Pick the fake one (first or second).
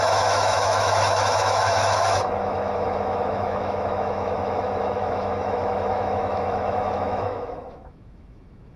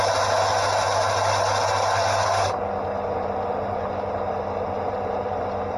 first